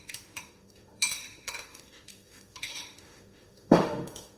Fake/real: fake